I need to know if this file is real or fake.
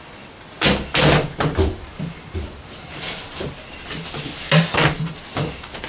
real